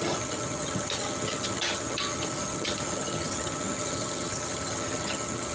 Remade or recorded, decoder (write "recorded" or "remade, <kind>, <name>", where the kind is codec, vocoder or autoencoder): remade, vocoder, HiFi-GAN